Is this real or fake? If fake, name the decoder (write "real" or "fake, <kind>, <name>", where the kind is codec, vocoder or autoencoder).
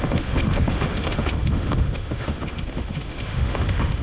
fake, autoencoder, DAC-VAE